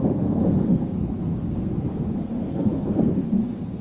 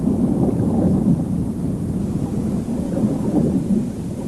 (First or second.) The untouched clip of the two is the second